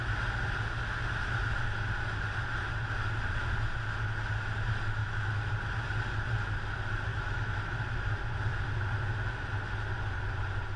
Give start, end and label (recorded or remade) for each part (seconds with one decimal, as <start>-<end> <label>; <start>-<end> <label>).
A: 0.0-5.0 recorded; 5.0-5.5 remade; 5.5-7.1 recorded; 7.1-7.8 remade; 7.8-10.8 recorded